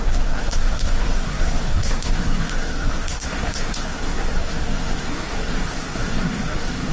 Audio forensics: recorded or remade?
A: remade